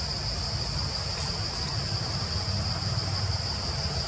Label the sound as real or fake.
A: real